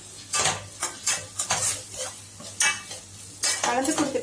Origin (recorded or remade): recorded